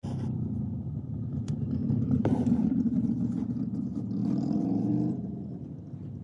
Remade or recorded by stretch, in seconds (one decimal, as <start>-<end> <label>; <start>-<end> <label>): 0.0-1.8 recorded; 1.8-3.0 remade; 3.0-4.2 recorded; 4.2-4.9 remade; 4.9-6.2 recorded